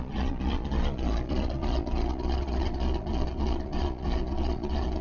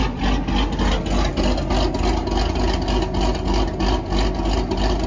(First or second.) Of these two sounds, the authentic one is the second